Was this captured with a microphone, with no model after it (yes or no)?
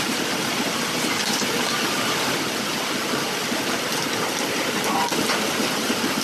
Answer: yes